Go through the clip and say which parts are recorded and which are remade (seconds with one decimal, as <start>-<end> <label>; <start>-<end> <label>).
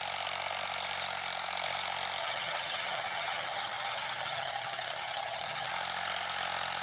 0.0-2.2 recorded; 2.2-5.7 remade; 5.7-6.8 recorded